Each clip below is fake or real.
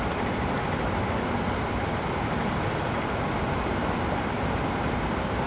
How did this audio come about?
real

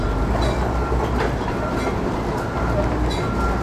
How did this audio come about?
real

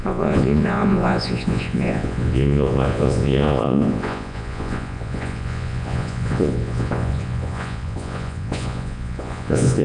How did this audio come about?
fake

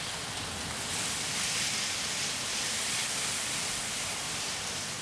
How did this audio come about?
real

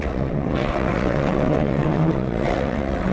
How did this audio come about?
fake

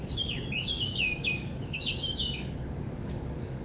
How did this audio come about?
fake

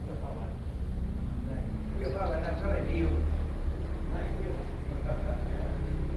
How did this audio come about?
real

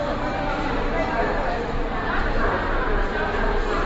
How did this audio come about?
fake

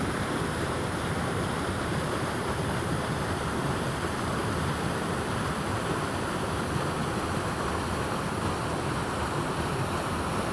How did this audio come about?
real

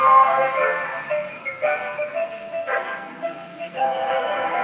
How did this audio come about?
fake